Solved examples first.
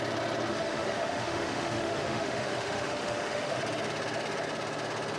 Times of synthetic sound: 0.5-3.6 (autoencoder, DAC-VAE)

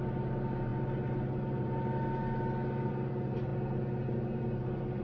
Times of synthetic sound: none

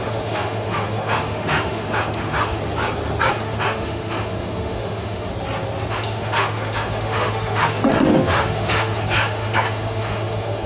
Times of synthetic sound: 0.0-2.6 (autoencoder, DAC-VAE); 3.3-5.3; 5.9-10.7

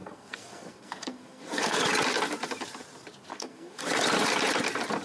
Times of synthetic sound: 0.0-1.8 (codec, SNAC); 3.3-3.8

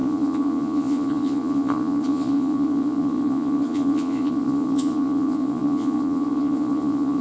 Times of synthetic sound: 0.0-7.2 (vocoder, Vocos)

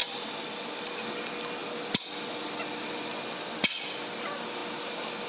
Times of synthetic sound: none